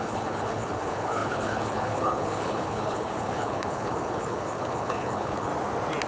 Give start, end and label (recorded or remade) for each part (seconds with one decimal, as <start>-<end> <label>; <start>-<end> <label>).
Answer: 0.0-5.5 remade; 5.5-6.1 recorded